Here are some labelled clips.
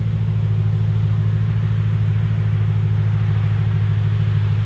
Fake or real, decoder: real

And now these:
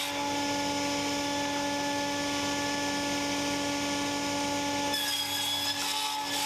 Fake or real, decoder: real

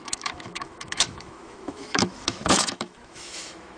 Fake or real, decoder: fake, autoencoder, DAC-VAE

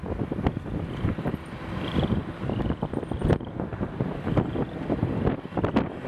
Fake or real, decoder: real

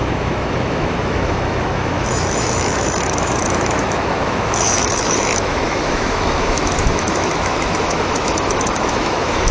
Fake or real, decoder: fake, autoencoder, DAC-VAE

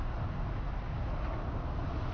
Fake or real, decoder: real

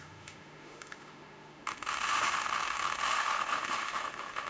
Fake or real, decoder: fake, autoencoder, DAC-VAE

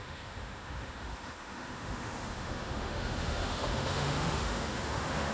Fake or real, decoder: fake, autoencoder, DAC-VAE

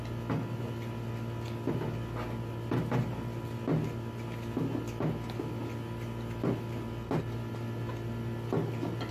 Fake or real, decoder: real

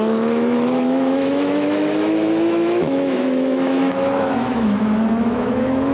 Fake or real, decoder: fake, autoencoder, DAC-VAE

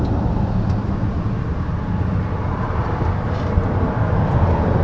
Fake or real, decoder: real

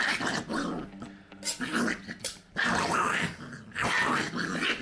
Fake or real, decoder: real